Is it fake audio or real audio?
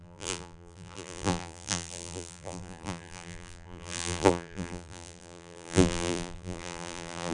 fake